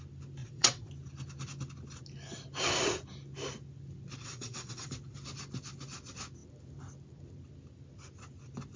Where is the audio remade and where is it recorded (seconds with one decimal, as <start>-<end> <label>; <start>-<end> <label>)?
0.0-0.4 recorded; 0.4-0.9 remade; 0.9-4.2 recorded; 4.2-4.9 remade; 4.9-8.8 recorded